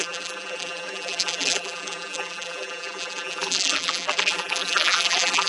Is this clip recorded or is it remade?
remade